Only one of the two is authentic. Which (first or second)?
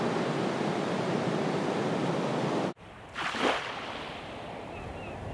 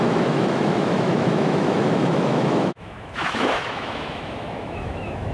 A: first